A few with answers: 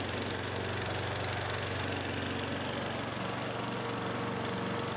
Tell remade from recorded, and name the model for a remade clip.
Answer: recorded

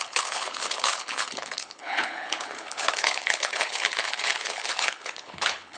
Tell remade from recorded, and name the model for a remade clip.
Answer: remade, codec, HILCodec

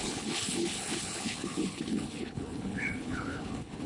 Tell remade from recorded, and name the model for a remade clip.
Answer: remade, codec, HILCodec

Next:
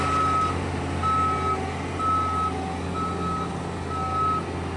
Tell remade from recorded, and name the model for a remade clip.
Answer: recorded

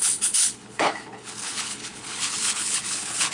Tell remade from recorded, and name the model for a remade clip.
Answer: remade, codec, HILCodec